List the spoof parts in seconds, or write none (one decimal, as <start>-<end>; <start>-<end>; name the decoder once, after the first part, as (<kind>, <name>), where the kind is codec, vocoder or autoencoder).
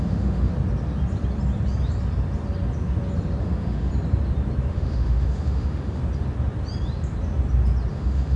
0.0-0.5 (autoencoder, DAC-VAE); 3.4-3.9; 4.7-6.0; 7.9-8.4